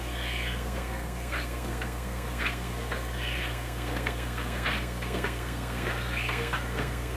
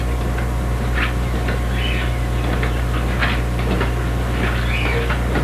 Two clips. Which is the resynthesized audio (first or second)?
first